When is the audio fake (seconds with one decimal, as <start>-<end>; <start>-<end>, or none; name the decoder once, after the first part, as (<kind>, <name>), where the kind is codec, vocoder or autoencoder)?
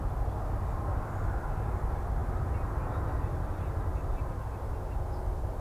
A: none